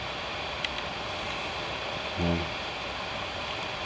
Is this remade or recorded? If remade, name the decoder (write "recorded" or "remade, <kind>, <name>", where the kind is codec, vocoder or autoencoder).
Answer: recorded